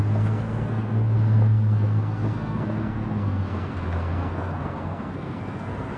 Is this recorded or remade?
remade